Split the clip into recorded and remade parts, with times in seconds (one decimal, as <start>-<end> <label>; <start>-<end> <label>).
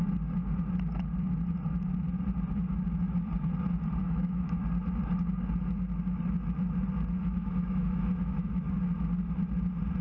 0.0-4.0 recorded; 4.0-4.6 remade; 4.6-7.2 recorded; 7.2-8.6 remade; 8.6-10.0 recorded